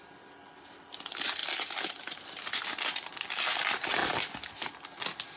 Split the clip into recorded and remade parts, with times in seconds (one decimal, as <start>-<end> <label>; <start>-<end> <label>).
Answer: 0.0-5.4 recorded